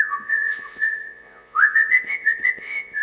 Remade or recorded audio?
remade